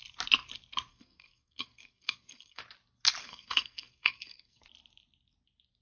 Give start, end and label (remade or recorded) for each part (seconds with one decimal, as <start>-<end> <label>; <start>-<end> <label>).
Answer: 0.0-0.9 recorded; 0.9-2.6 remade; 2.6-3.2 recorded; 3.2-4.6 remade; 4.6-5.8 recorded